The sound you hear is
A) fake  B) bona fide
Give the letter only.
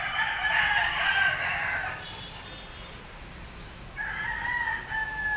B